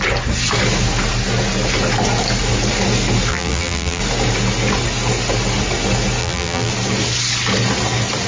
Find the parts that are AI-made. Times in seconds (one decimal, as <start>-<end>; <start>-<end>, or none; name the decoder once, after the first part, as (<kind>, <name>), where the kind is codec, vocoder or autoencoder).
3.3-4.0 (vocoder, BigVGAN v2); 6.2-6.7